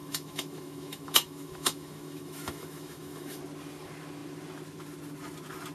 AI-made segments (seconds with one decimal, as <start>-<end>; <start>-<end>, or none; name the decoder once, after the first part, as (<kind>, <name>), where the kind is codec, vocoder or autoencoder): 0.0-3.4 (autoencoder, DAC-VAE)